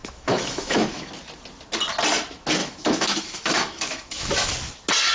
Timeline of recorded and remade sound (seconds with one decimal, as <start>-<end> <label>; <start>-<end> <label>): 0.0-1.1 remade; 1.1-2.6 recorded; 2.6-4.3 remade; 4.3-5.1 recorded